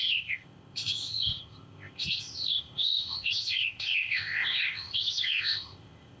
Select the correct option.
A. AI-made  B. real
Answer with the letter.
A